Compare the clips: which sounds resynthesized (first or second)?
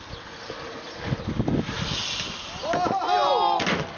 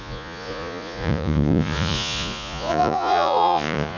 second